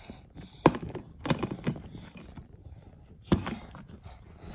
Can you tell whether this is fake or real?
real